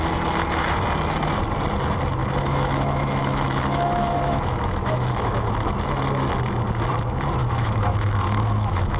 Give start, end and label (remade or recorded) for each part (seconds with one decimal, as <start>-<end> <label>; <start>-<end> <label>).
0.0-2.2 recorded; 2.2-5.5 remade; 5.5-7.4 recorded; 7.4-9.0 remade